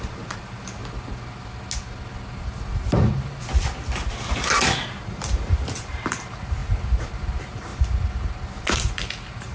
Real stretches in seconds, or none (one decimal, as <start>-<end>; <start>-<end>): 0.8-4.9; 7.7-8.7